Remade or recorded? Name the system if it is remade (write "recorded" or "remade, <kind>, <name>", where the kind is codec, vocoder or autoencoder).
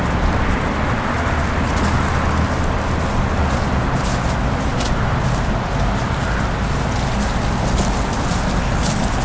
recorded